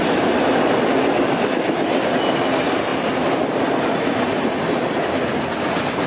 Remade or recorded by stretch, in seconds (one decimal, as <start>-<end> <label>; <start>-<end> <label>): 0.0-6.1 recorded